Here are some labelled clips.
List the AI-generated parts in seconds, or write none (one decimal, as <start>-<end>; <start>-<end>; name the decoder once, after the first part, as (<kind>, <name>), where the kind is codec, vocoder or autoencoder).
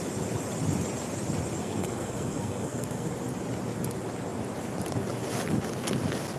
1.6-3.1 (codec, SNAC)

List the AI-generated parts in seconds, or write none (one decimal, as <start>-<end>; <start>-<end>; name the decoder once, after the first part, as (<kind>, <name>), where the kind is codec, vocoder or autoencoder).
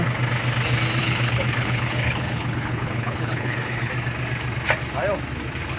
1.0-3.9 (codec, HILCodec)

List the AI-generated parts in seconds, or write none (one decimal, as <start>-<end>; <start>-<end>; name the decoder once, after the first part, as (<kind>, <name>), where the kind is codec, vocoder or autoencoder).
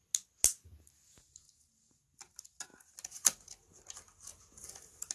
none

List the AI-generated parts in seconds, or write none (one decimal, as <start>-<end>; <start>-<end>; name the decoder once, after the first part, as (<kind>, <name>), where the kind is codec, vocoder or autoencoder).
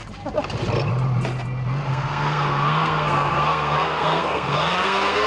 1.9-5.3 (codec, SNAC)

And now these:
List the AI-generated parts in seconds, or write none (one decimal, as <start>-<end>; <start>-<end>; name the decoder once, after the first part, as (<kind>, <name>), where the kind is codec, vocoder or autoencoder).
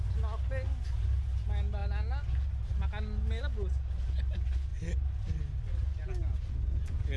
none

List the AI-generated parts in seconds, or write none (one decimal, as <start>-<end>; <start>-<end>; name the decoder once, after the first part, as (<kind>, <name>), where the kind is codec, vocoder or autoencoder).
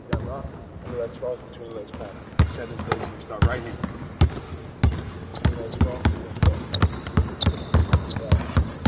none